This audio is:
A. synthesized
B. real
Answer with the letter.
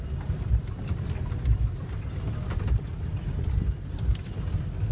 B